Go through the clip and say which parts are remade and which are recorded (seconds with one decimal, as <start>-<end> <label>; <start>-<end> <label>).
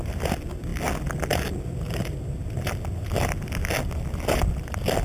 0.0-5.0 recorded